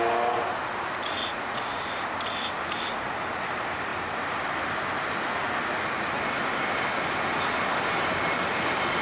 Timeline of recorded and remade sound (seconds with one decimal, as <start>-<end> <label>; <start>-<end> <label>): 0.0-1.2 recorded; 1.2-1.9 remade; 1.9-9.0 recorded